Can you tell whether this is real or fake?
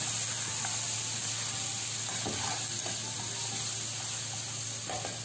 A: real